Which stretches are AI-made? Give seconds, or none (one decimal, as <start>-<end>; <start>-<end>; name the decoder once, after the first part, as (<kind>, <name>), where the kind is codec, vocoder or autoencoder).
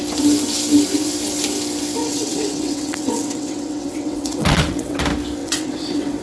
2.0-5.0 (vocoder, WaveNeXt); 5.4-6.2